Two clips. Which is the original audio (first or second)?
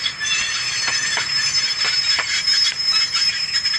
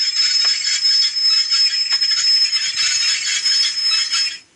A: second